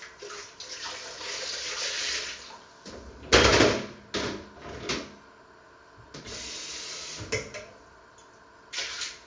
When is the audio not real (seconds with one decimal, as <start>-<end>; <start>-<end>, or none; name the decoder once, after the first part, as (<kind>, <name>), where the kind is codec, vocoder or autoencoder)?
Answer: none